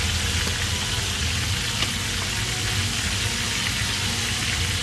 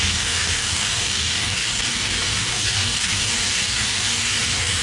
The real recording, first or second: first